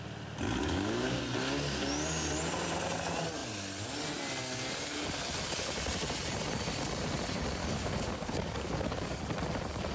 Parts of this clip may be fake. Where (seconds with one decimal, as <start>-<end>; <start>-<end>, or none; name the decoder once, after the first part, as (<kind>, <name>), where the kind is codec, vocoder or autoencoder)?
0.6-1.2 (codec, DAC); 7.6-9.2